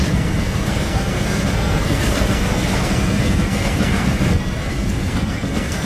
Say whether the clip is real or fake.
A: fake